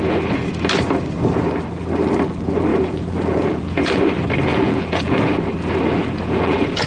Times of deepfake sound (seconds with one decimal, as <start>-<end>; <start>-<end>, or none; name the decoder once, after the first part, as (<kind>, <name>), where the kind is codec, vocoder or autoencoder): 2.7-4.0 (vocoder, Vocos); 4.5-5.3; 6.0-6.9